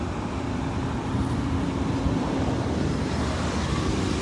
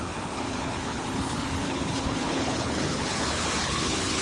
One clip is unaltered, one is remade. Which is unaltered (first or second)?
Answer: first